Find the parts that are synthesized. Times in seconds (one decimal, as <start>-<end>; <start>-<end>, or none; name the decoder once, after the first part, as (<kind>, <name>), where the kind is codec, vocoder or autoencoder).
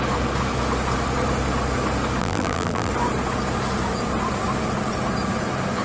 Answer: 2.2-2.9 (vocoder, BigVGAN v2)